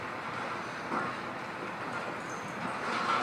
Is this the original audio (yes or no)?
yes